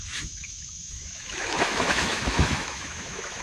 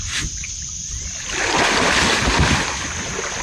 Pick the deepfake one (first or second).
first